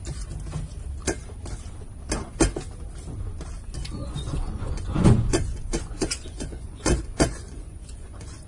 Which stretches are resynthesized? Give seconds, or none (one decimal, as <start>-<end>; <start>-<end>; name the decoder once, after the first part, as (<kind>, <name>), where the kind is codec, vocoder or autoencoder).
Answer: 4.0-8.5 (vocoder, Vocos)